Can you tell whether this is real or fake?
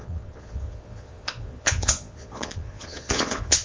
fake